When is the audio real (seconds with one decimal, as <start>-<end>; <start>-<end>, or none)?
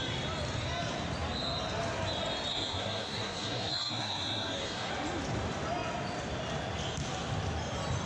0.0-2.5; 4.9-8.1